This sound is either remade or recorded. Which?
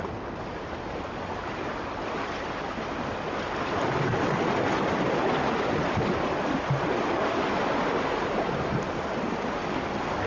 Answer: recorded